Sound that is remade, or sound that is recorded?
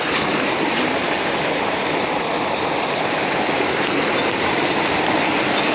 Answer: recorded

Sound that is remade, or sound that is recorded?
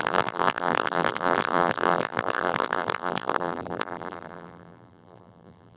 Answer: remade